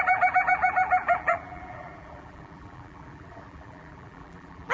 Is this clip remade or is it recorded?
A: remade